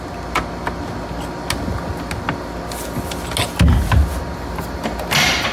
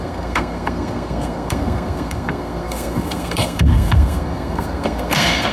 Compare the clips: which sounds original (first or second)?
first